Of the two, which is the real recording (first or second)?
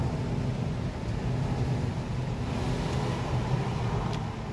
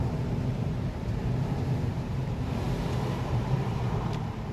first